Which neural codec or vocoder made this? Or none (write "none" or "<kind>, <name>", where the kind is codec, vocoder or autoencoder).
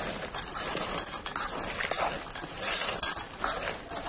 none